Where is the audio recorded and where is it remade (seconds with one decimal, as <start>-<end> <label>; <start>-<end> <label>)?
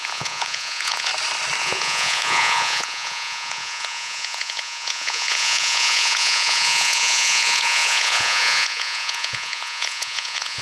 0.0-1.1 remade; 1.1-1.6 recorded; 1.6-10.6 remade